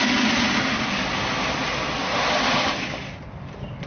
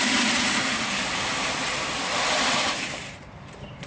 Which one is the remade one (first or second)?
second